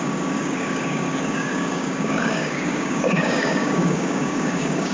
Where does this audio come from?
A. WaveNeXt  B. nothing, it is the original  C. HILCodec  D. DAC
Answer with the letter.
D